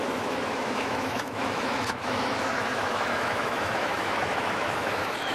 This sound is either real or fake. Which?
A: fake